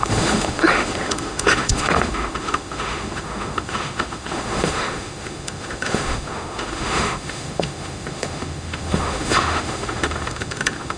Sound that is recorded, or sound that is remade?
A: remade